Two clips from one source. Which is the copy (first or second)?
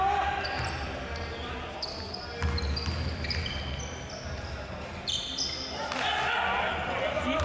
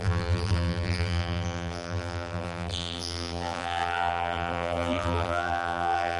second